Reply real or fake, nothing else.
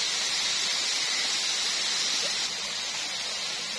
real